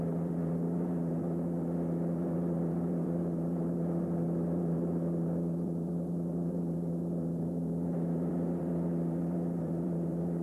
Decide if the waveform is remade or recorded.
remade